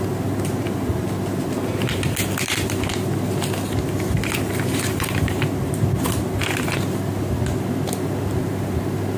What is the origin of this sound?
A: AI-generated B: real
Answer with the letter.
B